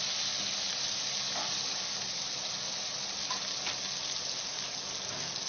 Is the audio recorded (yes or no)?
yes